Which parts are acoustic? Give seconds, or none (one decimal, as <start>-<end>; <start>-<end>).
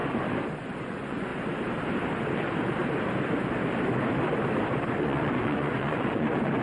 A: 0.0-0.8; 1.3-5.0